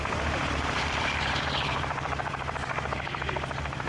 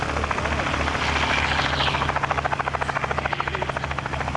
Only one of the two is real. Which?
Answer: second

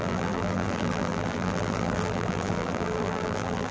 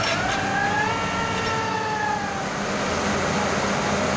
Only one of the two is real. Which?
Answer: second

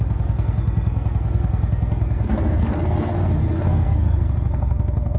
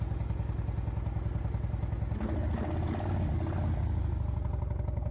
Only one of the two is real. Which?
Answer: second